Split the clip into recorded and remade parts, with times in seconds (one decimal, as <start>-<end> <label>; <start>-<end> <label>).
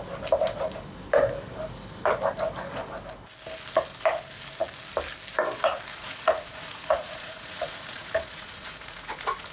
0.0-5.9 recorded; 5.9-9.5 remade